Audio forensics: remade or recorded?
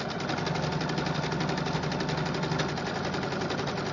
recorded